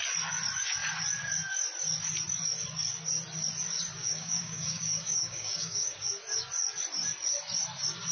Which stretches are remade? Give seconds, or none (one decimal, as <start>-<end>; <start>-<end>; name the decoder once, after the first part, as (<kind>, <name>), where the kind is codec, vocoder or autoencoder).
4.0-6.1 (codec, DAC)

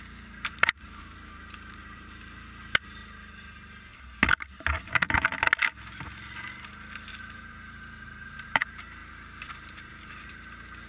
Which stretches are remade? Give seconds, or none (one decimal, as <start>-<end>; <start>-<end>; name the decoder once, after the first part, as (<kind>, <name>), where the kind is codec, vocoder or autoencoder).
0.0-3.0 (vocoder, BigVGAN v2); 4.8-5.3; 7.1-10.9

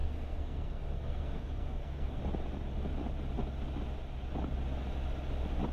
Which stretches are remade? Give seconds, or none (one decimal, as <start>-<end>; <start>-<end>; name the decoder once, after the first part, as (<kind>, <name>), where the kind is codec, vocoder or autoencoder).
0.0-2.2 (codec, SNAC)

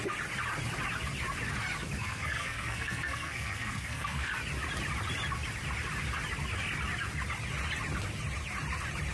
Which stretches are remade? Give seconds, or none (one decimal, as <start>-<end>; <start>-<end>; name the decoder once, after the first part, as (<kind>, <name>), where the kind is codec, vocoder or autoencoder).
2.0-4.3 (codec, SNAC)

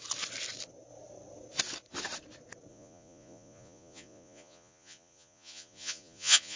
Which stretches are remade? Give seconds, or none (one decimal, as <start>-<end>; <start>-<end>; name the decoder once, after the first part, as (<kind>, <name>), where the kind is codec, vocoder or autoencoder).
2.7-6.6 (vocoder, Vocos)